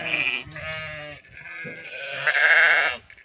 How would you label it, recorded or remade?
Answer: recorded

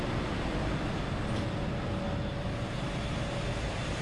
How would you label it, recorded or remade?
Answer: recorded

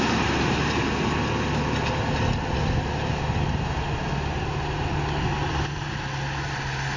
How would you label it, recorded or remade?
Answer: recorded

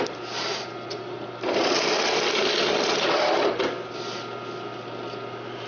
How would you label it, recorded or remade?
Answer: recorded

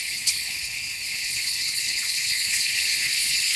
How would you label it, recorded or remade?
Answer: remade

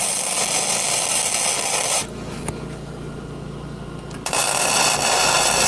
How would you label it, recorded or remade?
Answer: recorded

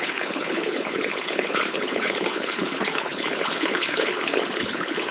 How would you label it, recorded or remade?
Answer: remade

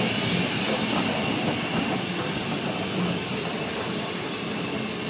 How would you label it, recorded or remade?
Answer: recorded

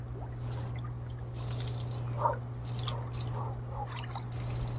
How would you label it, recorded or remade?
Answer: recorded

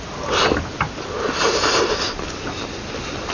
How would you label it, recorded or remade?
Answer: recorded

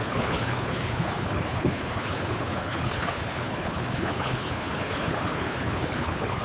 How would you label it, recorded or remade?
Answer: remade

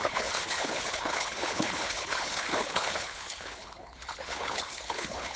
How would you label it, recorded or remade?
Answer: remade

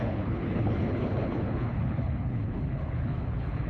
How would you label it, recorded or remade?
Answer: remade